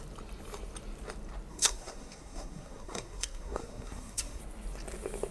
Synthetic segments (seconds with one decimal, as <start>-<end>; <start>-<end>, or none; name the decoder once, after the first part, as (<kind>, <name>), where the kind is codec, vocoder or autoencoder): 1.5-4.4 (codec, SNAC)